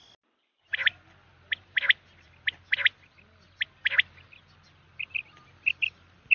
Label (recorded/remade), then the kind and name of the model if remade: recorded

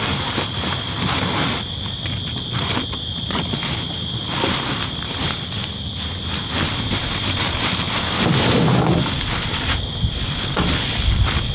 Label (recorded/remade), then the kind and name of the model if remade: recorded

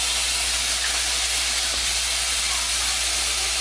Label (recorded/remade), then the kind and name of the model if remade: recorded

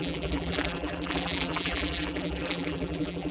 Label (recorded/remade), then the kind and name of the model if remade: remade, vocoder, BigVGAN v2